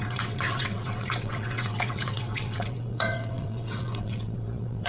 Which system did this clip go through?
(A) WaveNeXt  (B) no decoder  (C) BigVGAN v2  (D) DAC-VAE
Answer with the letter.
A